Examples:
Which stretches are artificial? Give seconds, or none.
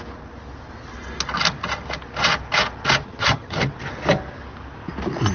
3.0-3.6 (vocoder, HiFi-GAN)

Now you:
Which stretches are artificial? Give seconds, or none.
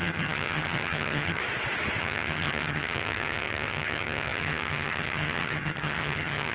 0.0-1.4 (vocoder, HiFi-GAN); 2.0-6.5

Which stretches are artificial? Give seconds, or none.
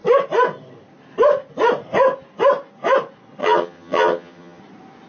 3.4-4.6 (vocoder, HiFi-GAN)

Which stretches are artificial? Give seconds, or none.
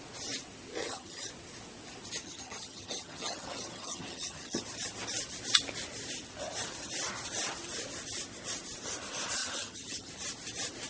0.8-1.3 (vocoder, HiFi-GAN); 2.2-4.6; 9.4-10.1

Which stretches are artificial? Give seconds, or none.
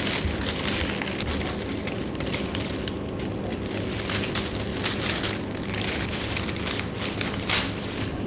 none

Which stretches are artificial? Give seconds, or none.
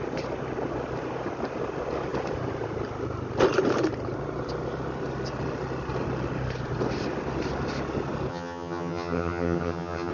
8.3-10.1 (vocoder, HiFi-GAN)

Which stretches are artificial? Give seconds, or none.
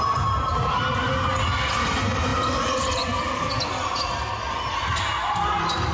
none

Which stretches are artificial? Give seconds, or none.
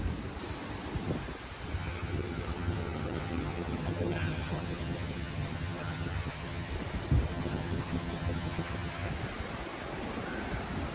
1.8-6.7 (vocoder, HiFi-GAN); 7.3-9.1